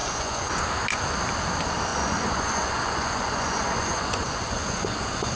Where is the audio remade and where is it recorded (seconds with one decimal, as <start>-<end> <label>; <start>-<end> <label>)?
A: 0.0-0.6 remade; 0.6-1.9 recorded; 1.9-5.4 remade